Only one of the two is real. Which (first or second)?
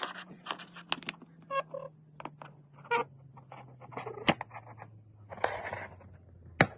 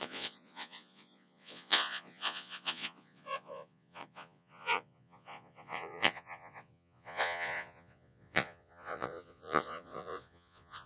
first